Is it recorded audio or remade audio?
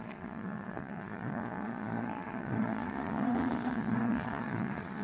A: remade